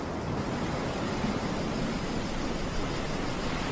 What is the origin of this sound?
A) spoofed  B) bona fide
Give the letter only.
B